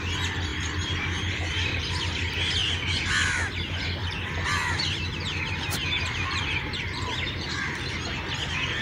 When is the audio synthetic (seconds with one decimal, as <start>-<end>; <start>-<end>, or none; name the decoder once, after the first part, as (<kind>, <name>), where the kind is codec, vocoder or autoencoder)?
0.5-2.0 (vocoder, BigVGAN v2); 5.8-7.7